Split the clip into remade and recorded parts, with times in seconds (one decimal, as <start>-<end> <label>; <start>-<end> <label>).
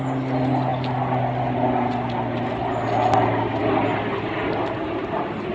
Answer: 0.0-5.5 recorded